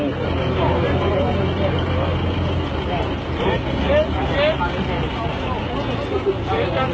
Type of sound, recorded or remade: recorded